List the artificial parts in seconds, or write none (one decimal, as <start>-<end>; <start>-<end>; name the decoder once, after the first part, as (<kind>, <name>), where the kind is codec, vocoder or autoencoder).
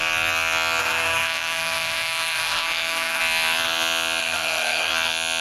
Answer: 0.8-3.2 (codec, SNAC); 4.2-4.9